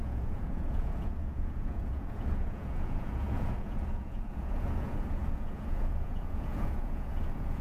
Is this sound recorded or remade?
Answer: remade